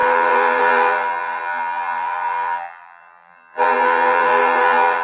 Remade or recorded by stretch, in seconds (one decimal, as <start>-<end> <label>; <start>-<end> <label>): 0.0-5.0 remade